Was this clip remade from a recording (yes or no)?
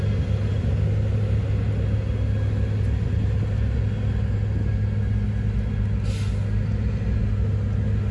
no